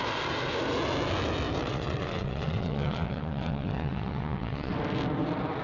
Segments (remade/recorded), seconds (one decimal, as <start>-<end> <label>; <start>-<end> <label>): 0.0-1.6 recorded; 1.6-4.7 remade; 4.7-5.6 recorded